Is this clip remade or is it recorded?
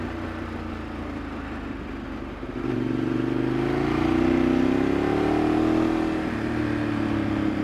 recorded